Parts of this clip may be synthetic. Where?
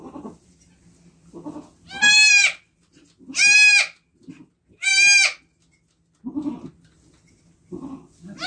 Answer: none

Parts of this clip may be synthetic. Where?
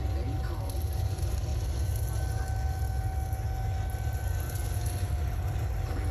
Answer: none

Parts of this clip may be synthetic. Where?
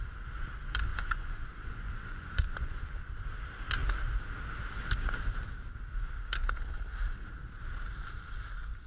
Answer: 0.9-3.0 (vocoder, Vocos)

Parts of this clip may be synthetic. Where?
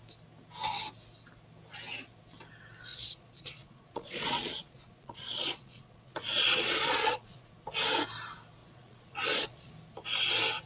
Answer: 2.9-7.5 (vocoder, Vocos); 8.6-9.7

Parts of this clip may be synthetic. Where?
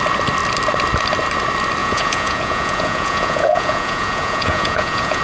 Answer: 1.8-5.2 (vocoder, Vocos)